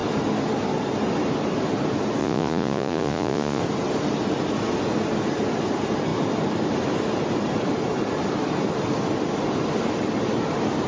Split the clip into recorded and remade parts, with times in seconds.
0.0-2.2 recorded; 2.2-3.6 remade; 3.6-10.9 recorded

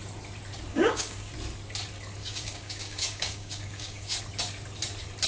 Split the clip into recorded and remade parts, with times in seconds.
0.0-0.7 recorded; 0.7-1.3 remade; 1.3-2.2 recorded; 2.2-4.2 remade; 4.2-5.3 recorded

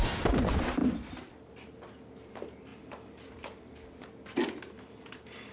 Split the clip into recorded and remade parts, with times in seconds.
0.0-2.7 recorded; 2.7-5.5 remade

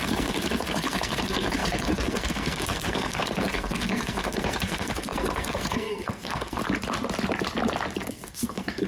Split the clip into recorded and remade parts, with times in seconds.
0.0-6.6 remade; 6.6-8.1 recorded; 8.1-8.9 remade

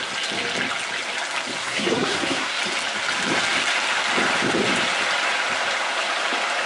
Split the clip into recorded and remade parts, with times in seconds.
0.0-1.6 recorded; 1.6-2.6 remade; 2.6-6.7 recorded

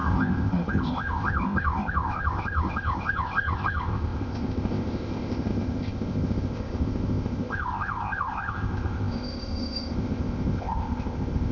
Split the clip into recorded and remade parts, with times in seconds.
0.0-11.5 remade

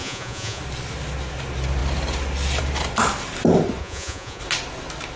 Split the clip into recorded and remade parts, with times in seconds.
0.0-0.6 remade; 0.6-3.8 recorded; 3.8-4.4 remade; 4.4-5.2 recorded

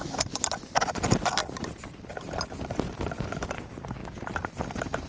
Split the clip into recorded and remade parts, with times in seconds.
0.0-5.1 recorded